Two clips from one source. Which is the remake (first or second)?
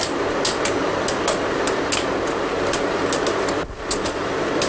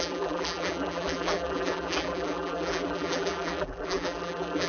second